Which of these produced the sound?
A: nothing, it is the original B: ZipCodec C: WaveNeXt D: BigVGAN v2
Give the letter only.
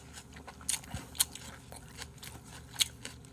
A